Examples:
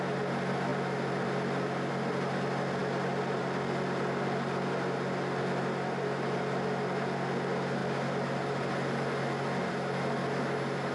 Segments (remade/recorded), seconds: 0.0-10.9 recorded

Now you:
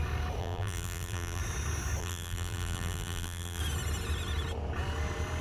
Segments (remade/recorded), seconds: 0.0-0.4 recorded; 0.4-1.4 remade; 1.4-2.0 recorded; 2.0-3.6 remade; 3.6-5.4 recorded

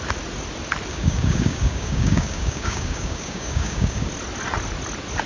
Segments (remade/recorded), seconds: 0.0-0.9 recorded; 0.9-4.1 remade; 4.1-5.3 recorded